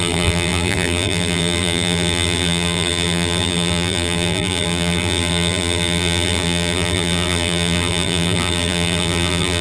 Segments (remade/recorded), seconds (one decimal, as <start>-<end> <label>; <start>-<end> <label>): 0.0-9.6 remade